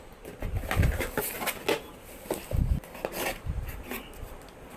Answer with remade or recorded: recorded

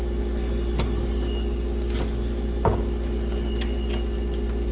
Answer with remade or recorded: recorded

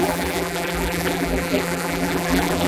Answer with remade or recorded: remade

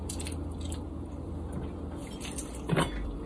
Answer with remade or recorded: remade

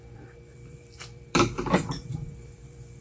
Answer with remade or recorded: remade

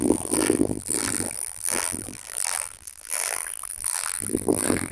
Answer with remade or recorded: remade